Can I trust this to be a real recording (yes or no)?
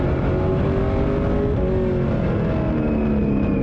yes